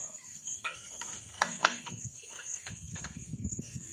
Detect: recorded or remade remade